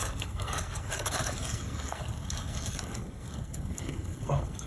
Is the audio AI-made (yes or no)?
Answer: yes